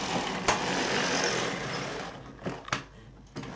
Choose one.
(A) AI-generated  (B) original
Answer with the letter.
B